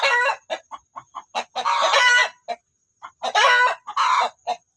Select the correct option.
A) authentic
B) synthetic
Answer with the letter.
A